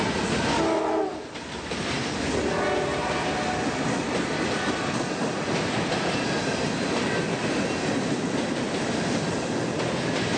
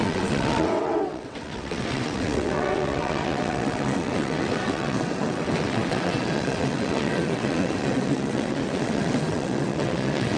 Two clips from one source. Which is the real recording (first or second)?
first